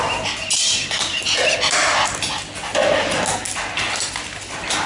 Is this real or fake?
real